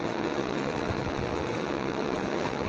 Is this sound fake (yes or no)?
yes